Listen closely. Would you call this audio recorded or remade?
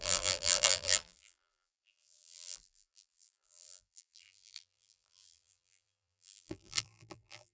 remade